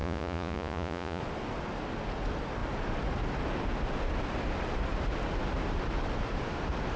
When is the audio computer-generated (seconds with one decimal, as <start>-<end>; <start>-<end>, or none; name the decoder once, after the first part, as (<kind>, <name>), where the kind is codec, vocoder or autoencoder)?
0.0-1.2 (vocoder, Vocos)